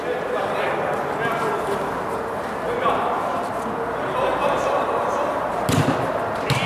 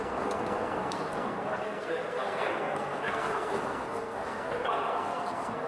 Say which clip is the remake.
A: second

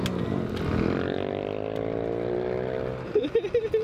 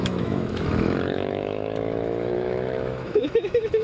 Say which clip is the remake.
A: second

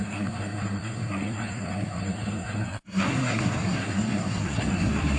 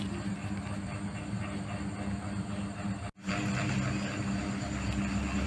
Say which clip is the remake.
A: first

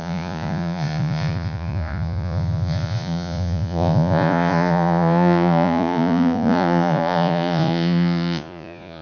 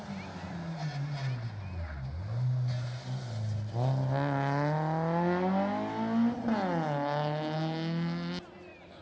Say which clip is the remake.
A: first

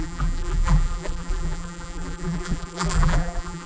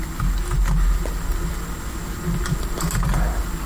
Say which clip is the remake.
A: first